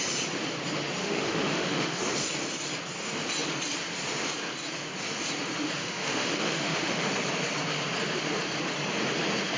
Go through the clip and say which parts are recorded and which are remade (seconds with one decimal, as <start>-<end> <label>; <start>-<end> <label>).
0.0-1.0 recorded; 1.0-2.0 remade; 2.0-5.8 recorded; 5.8-7.1 remade; 7.1-9.6 recorded